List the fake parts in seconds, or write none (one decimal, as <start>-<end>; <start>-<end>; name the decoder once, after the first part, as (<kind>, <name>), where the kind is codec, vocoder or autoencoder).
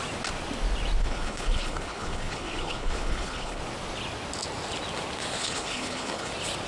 1.0-3.6 (codec, HILCodec); 5.4-6.3